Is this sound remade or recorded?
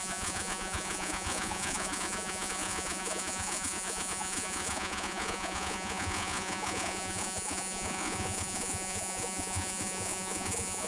remade